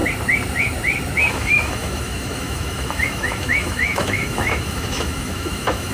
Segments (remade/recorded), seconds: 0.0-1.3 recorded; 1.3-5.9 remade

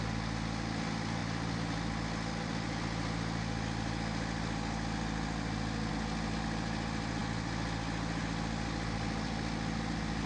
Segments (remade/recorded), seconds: 0.0-10.3 recorded

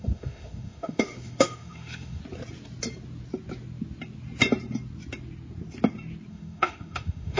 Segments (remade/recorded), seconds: 0.0-2.2 remade; 2.2-6.3 recorded; 6.3-7.4 remade

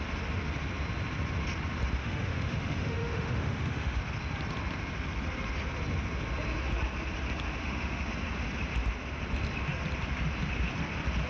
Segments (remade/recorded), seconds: 0.0-2.0 recorded; 2.0-4.0 remade; 4.0-7.6 recorded; 7.6-8.1 remade; 8.1-11.3 recorded

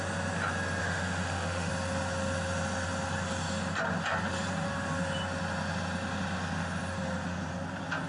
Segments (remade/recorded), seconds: 0.0-0.8 recorded; 0.8-1.7 remade; 1.7-8.1 recorded

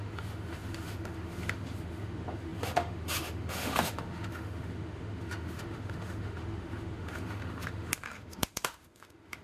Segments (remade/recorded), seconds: 0.0-9.4 remade

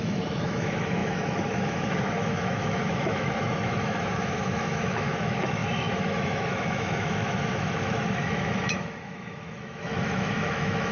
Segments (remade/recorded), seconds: 0.0-10.9 remade